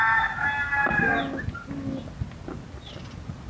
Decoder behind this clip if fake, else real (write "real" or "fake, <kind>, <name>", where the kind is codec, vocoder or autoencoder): real